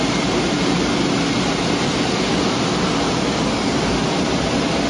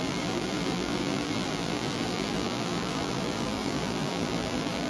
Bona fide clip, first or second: first